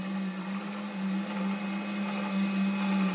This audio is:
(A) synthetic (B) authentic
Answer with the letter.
B